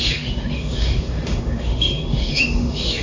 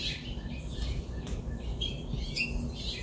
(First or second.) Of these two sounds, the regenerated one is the first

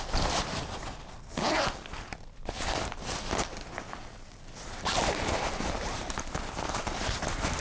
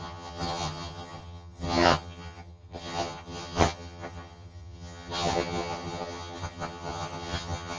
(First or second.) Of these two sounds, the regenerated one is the second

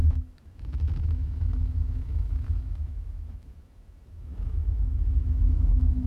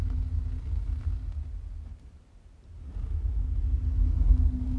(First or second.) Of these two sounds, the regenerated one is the first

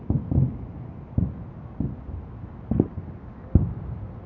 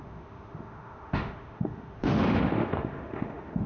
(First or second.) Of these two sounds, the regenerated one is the second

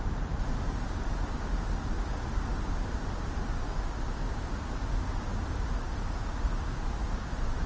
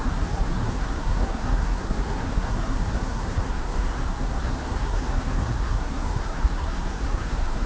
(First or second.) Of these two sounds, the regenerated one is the second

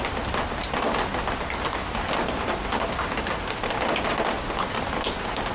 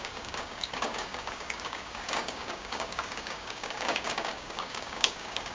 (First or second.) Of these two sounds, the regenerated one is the second